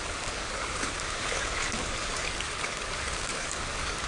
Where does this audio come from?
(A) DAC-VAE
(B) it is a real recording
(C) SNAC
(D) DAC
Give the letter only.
D